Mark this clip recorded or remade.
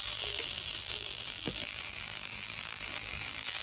remade